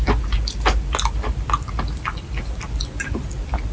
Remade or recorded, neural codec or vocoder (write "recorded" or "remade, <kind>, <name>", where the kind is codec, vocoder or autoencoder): recorded